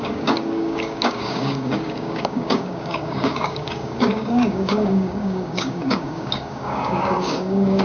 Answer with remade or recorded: remade